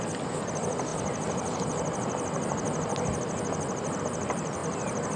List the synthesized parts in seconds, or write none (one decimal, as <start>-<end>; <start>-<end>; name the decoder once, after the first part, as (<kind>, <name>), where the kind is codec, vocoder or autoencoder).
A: 4.6-5.2 (vocoder, BigVGAN v2)

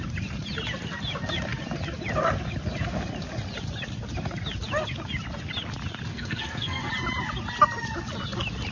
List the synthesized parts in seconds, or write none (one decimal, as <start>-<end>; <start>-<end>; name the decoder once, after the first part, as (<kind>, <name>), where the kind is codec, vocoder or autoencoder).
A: 6.1-6.9 (codec, SNAC)

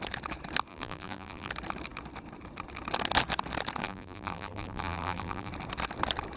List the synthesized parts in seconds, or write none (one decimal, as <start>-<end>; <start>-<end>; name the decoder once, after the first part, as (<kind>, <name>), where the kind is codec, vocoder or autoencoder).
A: 0.7-1.5 (vocoder, BigVGAN v2); 3.8-5.5

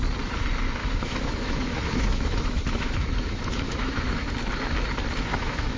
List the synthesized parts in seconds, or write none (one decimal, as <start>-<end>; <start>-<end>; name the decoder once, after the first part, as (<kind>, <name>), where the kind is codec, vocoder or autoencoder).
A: 0.8-4.3 (autoencoder, DAC-VAE); 5.3-5.8